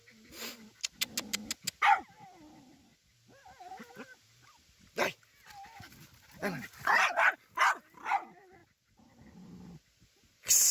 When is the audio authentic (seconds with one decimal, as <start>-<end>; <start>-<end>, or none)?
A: 0.0-10.7